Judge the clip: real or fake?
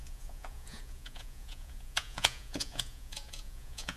fake